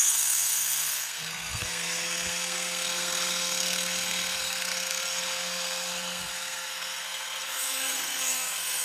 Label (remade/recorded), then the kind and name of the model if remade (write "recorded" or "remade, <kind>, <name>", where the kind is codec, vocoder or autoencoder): remade, codec, SNAC